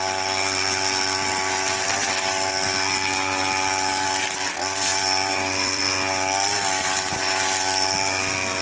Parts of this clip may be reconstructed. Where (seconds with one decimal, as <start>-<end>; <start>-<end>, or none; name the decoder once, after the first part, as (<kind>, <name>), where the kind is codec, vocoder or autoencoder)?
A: 4.9-5.8 (vocoder, BigVGAN v2)